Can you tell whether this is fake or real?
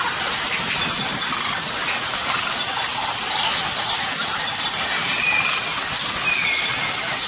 real